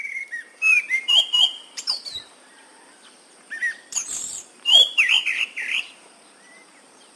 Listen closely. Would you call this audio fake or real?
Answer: fake